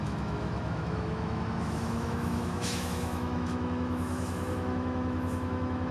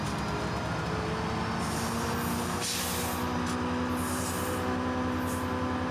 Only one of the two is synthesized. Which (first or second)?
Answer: first